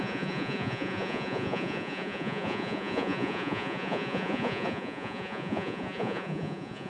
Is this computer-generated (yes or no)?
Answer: yes